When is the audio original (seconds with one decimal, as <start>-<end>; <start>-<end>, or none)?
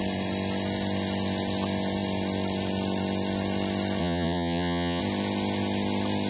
0.0-4.0; 5.0-6.3